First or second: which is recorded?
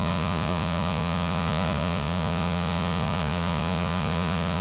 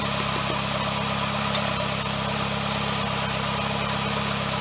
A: second